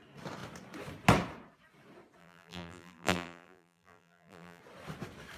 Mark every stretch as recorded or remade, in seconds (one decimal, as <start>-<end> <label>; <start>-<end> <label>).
0.0-2.2 recorded; 2.2-4.6 remade; 4.6-5.4 recorded